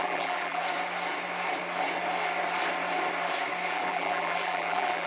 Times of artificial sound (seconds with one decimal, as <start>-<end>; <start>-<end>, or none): 0.0-0.6; 3.7-5.1